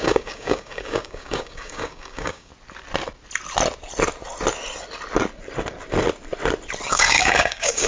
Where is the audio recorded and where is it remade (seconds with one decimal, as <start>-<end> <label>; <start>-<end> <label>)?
0.0-2.5 remade; 2.5-6.9 recorded; 6.9-7.9 remade